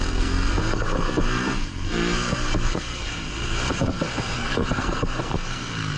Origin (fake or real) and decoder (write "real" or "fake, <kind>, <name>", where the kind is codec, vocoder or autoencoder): fake, codec, SNAC